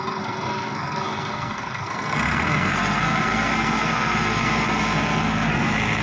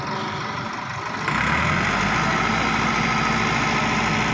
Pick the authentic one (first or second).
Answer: second